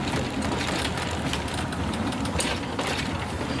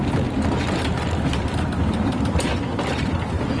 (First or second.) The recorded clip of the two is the first